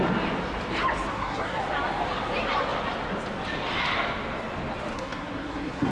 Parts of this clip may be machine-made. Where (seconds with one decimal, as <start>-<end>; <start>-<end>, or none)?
1.1-1.6; 4.9-5.9